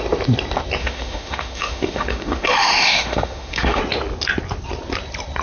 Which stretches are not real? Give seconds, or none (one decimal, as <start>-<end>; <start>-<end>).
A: 0.8-3.8

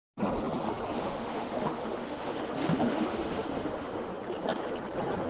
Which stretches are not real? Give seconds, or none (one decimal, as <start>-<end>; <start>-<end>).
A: 0.9-4.1

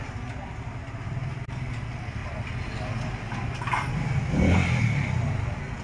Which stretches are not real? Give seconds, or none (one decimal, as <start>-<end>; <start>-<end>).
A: none

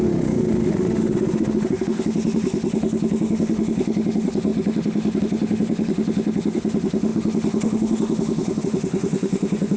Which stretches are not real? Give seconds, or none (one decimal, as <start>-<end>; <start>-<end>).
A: 0.0-9.8

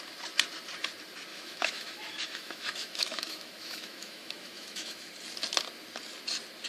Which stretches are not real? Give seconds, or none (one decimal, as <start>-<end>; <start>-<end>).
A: 1.3-5.1

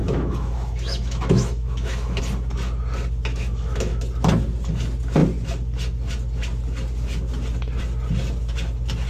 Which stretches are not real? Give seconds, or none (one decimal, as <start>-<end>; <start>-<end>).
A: 0.0-2.2; 3.3-4.0

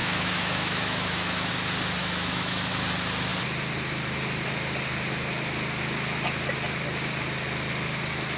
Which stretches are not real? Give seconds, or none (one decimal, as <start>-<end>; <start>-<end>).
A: 0.0-1.5; 2.0-2.7

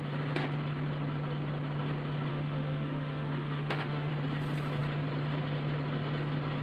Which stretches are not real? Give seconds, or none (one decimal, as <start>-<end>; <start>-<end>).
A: 2.3-4.1